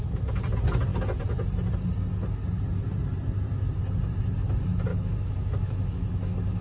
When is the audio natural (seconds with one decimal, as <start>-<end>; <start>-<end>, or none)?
0.0-4.9

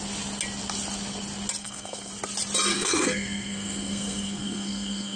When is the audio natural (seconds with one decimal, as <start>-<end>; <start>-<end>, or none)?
0.0-1.6; 2.1-2.7

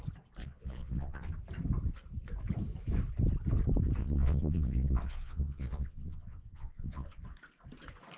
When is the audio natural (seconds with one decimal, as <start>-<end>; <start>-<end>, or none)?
0.0-0.4; 1.3-4.0; 7.2-8.2

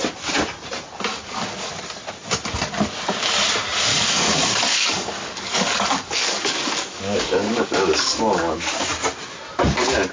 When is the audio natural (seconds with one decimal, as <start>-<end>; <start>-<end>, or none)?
0.0-1.1; 1.7-3.9; 8.9-10.1

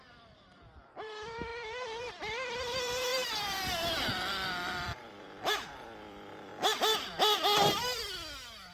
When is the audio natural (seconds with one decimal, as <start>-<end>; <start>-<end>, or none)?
6.5-8.7

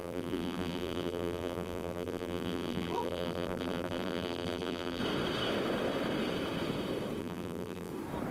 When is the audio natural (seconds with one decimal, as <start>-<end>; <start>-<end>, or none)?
5.0-7.2; 7.9-8.3

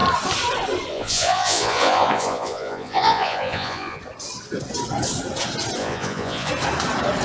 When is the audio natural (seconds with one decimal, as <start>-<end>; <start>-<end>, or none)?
0.0-0.9; 4.0-5.8; 6.5-7.2